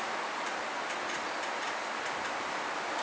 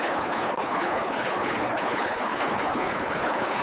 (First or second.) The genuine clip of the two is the first